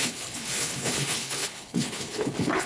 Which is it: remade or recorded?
remade